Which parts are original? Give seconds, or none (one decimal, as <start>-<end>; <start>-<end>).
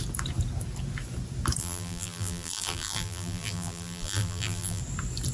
0.0-1.6; 4.8-5.3